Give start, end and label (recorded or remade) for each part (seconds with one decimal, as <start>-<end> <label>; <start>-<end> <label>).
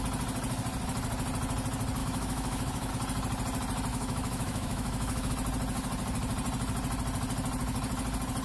0.0-2.0 recorded; 2.0-2.9 remade; 2.9-3.9 recorded; 3.9-5.3 remade; 5.3-8.4 recorded